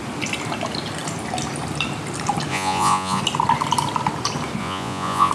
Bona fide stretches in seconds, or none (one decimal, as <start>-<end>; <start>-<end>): 0.0-2.5; 3.2-4.6